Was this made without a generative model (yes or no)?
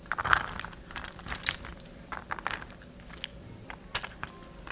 yes